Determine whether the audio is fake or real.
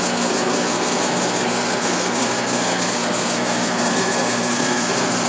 fake